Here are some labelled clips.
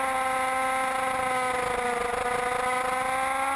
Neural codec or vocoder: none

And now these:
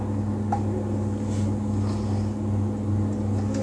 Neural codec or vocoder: none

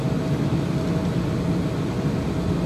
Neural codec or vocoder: none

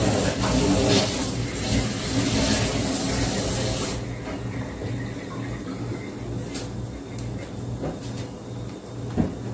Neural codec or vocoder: none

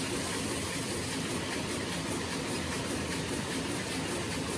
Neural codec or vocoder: none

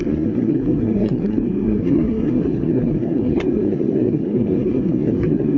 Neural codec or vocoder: codec, SNAC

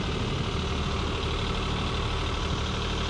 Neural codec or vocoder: none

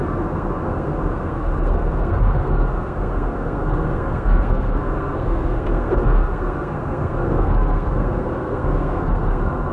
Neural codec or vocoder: codec, SNAC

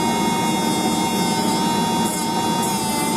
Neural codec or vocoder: none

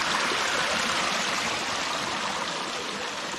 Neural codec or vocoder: none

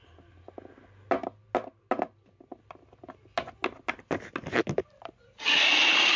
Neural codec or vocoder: none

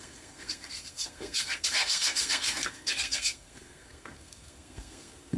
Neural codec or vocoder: codec, SNAC